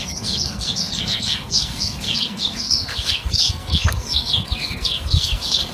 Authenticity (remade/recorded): remade